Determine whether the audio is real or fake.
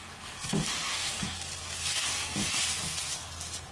fake